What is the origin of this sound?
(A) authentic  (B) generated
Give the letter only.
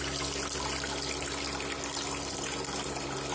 A